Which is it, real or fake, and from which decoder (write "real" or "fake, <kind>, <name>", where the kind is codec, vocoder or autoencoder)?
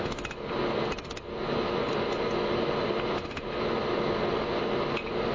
real